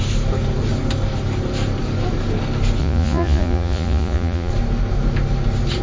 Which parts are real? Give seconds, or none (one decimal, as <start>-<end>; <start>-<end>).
0.0-2.8; 4.5-5.8